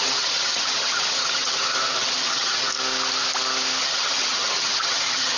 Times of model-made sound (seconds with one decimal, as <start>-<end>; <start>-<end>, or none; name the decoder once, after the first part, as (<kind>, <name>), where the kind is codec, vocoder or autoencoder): 0.0-2.7 (vocoder, HiFi-GAN); 3.8-5.4